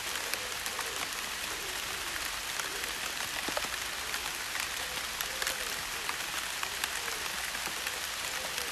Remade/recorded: recorded